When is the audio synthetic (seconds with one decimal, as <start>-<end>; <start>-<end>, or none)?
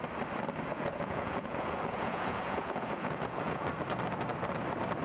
0.7-3.7